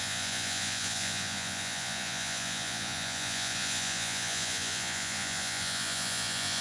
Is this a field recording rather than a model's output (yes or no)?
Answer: no